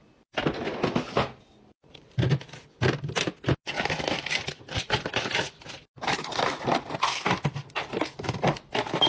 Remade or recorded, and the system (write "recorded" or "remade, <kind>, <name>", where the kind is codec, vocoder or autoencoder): recorded